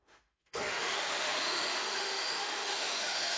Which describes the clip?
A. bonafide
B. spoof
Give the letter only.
B